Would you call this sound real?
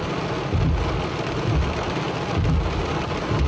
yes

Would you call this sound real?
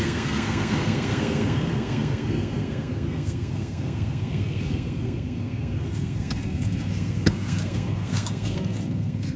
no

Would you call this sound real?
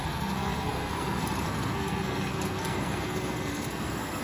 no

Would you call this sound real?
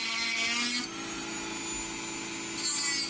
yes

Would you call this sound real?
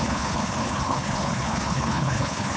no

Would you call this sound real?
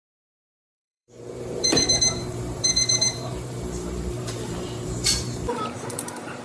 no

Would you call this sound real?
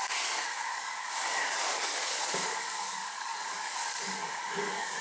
no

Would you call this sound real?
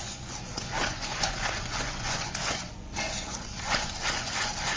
no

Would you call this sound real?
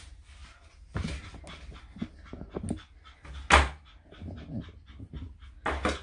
yes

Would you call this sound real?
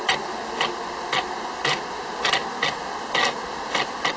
yes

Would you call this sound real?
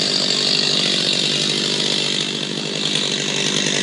yes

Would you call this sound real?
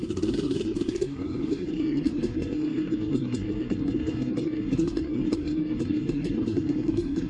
no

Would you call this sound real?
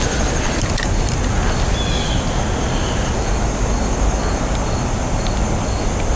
yes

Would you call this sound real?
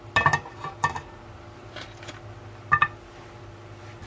yes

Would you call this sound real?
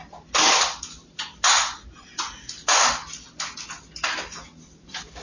yes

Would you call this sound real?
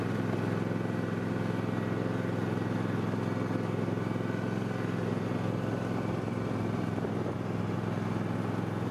yes